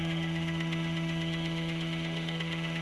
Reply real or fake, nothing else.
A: fake